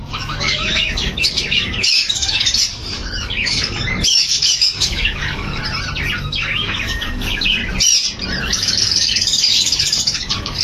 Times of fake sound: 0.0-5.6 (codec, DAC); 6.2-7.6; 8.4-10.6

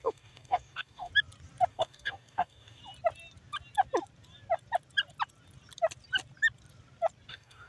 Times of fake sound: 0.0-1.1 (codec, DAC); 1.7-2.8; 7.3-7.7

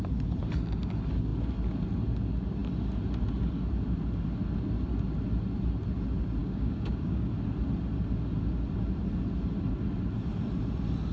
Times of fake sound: 6.4-7.3 (codec, DAC)

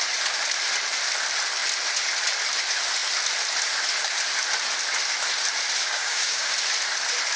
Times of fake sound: 5.8-6.5 (codec, DAC)

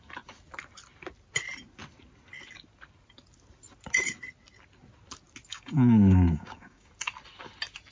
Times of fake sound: 5.5-6.9 (codec, DAC)

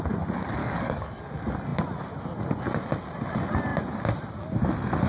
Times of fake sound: 0.6-1.2 (codec, DAC)